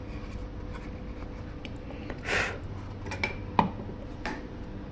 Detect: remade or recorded recorded